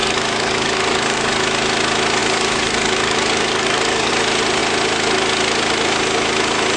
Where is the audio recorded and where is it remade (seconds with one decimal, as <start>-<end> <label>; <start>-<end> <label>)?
0.0-1.3 remade; 1.3-2.2 recorded; 2.2-4.1 remade; 4.1-6.8 recorded